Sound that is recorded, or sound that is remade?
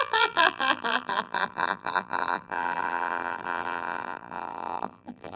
remade